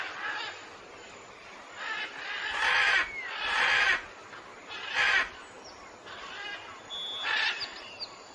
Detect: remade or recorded recorded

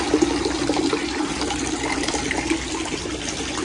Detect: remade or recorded recorded